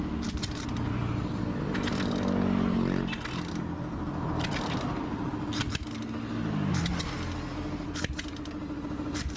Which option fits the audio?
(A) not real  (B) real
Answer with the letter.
B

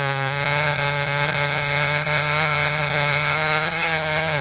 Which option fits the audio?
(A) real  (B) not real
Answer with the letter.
B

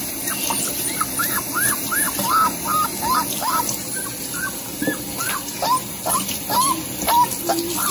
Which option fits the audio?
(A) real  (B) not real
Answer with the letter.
A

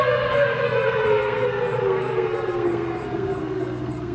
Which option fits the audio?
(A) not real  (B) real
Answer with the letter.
A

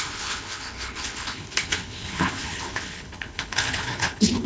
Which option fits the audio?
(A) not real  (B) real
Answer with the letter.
A